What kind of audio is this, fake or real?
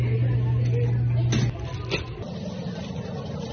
real